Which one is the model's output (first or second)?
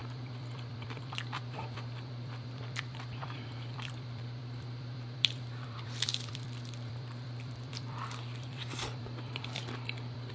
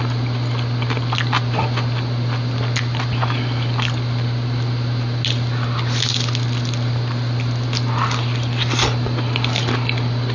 first